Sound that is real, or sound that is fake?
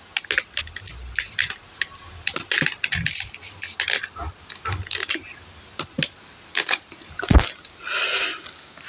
real